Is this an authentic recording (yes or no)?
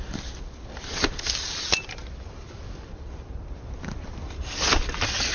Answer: no